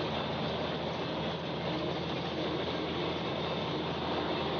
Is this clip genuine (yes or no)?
yes